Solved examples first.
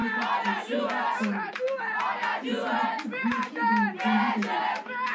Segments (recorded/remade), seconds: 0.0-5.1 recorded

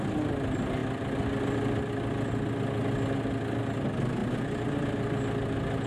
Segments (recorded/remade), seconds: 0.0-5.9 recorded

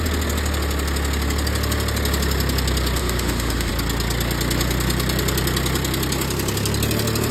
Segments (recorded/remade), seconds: 0.0-3.0 recorded; 3.0-3.7 remade; 3.7-7.3 recorded